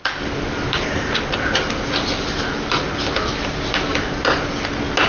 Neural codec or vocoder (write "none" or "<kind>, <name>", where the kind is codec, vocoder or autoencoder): none